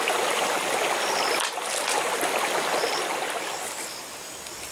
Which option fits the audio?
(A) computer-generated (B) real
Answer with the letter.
B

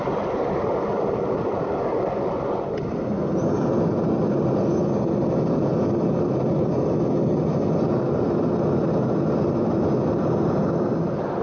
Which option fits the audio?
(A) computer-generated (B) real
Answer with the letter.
B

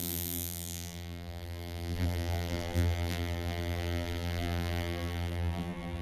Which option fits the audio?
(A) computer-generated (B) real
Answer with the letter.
A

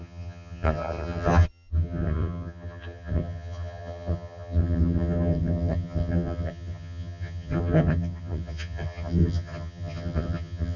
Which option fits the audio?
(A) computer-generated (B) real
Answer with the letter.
A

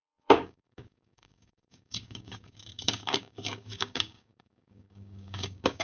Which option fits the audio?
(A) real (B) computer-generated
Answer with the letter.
B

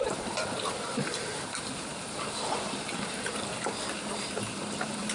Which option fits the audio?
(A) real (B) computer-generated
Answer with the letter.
B